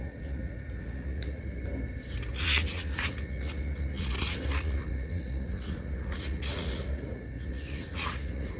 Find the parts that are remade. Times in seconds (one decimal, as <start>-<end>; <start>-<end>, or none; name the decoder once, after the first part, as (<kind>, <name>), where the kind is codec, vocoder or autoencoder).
0.0-1.6 (vocoder, Vocos); 2.3-8.6